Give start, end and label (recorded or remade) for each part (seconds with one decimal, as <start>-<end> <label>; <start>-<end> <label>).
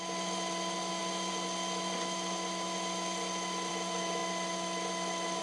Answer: 0.0-5.4 recorded